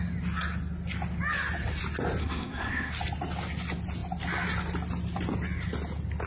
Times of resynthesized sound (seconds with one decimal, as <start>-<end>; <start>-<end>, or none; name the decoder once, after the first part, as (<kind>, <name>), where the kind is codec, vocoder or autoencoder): 2.2-2.9 (codec, SNAC)